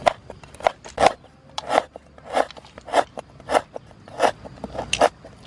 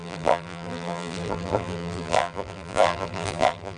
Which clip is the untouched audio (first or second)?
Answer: first